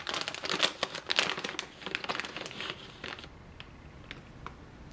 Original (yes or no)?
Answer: yes